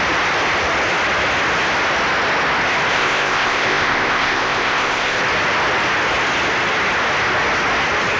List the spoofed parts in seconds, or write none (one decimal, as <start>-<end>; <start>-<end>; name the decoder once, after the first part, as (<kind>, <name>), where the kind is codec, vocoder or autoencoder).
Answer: 2.9-5.2 (codec, ZipCodec)